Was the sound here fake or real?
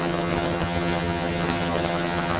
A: fake